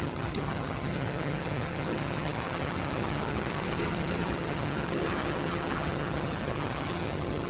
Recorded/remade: remade